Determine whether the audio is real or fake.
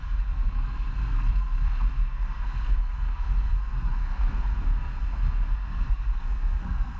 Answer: fake